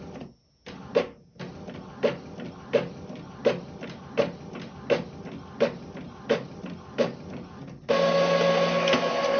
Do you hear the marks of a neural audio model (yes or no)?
no